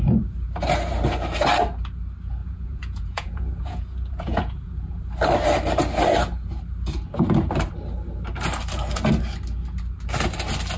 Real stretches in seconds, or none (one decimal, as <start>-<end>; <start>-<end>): 0.0-2.4; 4.9-10.8